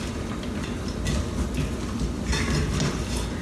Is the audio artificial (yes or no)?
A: no